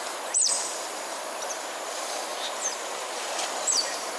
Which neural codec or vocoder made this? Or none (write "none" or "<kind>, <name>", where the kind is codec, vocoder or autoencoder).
vocoder, BigVGAN v2